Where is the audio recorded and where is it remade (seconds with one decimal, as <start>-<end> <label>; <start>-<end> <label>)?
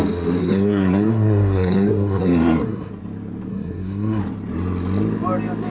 0.0-0.4 recorded; 0.4-2.9 remade; 2.9-3.5 recorded; 3.5-4.2 remade; 4.2-5.7 recorded